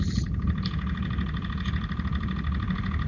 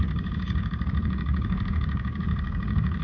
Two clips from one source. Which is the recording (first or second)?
first